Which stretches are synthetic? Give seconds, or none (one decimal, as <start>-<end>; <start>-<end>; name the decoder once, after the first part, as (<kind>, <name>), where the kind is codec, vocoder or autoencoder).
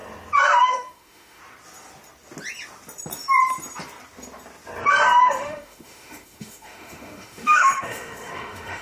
0.6-1.4 (autoencoder, DAC-VAE); 5.2-8.8